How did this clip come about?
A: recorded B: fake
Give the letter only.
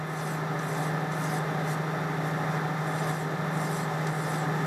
A